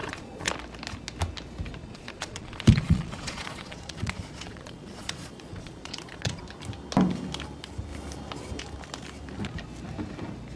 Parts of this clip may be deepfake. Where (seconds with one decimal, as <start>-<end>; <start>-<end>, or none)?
0.0-0.5; 1.8-6.4

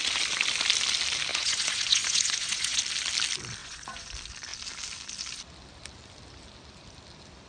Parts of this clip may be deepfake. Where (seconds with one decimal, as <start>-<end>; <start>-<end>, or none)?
1.3-2.8; 3.6-4.1

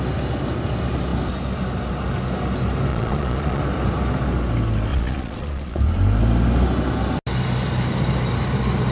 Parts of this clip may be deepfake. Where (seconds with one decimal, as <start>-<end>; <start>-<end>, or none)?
2.9-3.6; 4.9-5.8

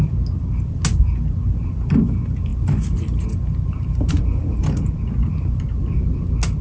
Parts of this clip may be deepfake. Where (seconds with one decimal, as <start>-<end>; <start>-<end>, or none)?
none